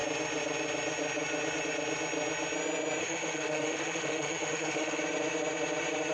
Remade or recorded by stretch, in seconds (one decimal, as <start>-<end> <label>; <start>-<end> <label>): 0.0-3.0 recorded; 3.0-5.0 remade; 5.0-6.1 recorded